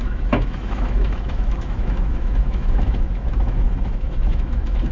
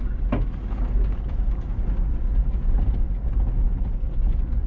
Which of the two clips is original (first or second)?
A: second